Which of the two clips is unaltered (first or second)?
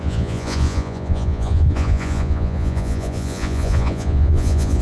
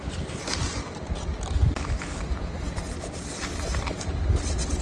second